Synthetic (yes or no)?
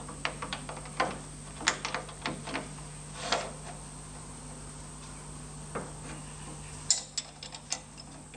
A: no